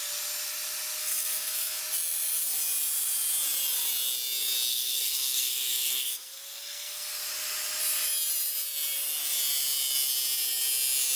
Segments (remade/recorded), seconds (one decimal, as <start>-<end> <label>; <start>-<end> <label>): 0.0-1.0 recorded; 1.0-1.8 remade; 1.8-4.7 recorded; 4.7-7.1 remade; 7.1-11.2 recorded